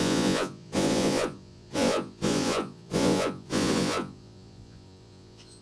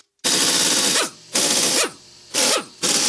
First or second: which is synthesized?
first